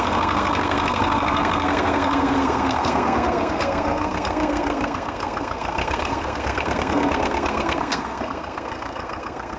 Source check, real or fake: fake